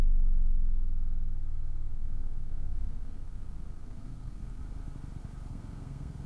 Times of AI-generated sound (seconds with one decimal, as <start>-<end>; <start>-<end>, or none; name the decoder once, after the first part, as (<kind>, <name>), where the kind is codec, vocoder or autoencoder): 1.9-4.6 (codec, SNAC); 5.5-6.3